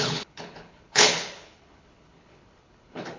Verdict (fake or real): fake